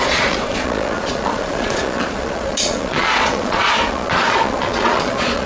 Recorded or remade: remade